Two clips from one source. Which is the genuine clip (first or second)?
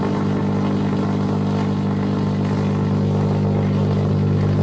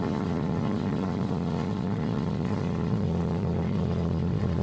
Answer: first